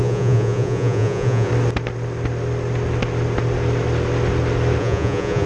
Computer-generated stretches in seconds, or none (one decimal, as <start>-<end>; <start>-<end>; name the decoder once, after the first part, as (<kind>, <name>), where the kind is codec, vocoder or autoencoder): 0.0-1.5 (vocoder, Vocos); 4.8-5.5